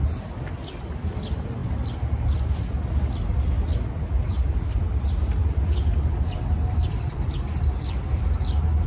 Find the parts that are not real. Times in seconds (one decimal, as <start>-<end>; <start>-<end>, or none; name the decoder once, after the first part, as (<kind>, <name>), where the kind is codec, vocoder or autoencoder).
4.3-7.1 (vocoder, BigVGAN v2)